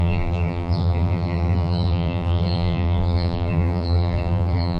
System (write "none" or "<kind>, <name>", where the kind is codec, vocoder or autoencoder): vocoder, BigVGAN v2